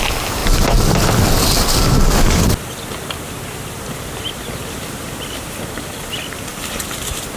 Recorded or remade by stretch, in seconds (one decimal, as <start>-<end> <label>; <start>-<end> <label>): 0.0-0.4 remade; 0.4-4.0 recorded; 4.0-7.4 remade